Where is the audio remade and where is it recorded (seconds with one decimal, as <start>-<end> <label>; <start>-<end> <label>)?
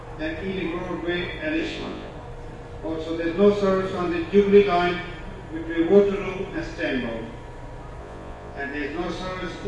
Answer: 0.0-1.6 recorded; 1.6-2.1 remade; 2.1-8.0 recorded; 8.0-8.6 remade; 8.6-9.7 recorded